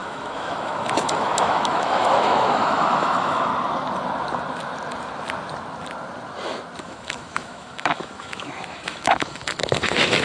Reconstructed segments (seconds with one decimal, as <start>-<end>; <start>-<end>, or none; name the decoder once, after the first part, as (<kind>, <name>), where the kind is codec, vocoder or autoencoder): 0.0-3.5 (autoencoder, DAC-VAE); 6.8-10.2